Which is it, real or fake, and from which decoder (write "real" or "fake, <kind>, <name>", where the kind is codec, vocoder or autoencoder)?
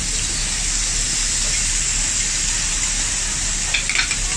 real